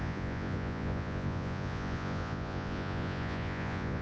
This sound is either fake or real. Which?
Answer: fake